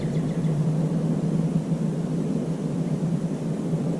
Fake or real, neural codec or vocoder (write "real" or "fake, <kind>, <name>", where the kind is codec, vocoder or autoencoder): fake, vocoder, BigVGAN v2